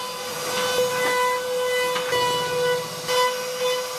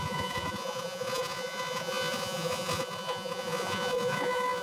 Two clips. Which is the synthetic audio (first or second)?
second